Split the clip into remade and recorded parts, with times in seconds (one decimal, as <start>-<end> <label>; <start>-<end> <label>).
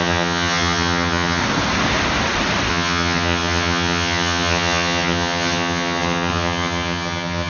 0.0-1.4 remade; 1.4-2.7 recorded; 2.7-7.5 remade